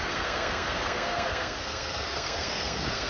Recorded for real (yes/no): no